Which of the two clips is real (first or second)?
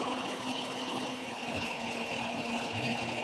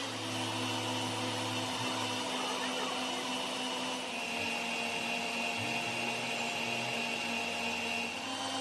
second